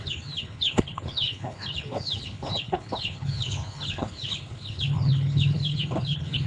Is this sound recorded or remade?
remade